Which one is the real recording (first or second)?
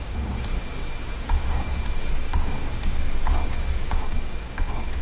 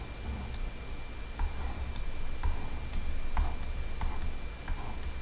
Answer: second